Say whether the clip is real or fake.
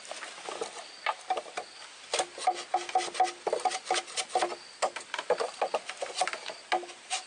real